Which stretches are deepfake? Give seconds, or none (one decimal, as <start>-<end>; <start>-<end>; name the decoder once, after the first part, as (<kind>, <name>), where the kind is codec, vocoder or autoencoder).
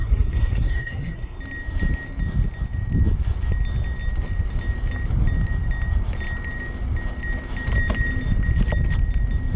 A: 0.0-1.4 (codec, SNAC)